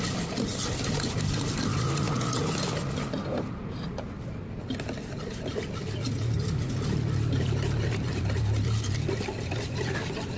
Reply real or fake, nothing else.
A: real